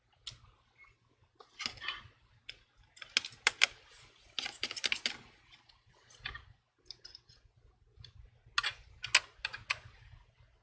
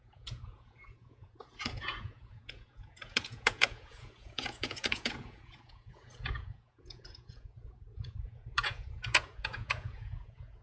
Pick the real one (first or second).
first